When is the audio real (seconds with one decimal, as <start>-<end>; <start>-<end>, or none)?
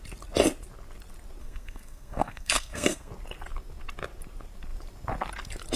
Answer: 0.0-1.4; 3.1-5.8